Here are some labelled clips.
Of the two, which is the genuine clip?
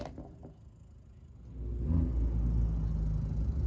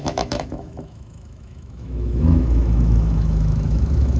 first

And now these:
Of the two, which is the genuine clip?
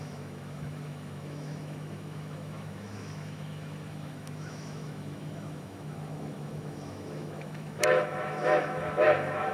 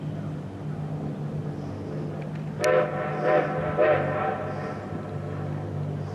second